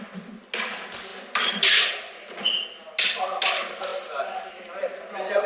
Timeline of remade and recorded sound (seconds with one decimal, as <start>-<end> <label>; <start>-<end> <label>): 0.0-5.5 recorded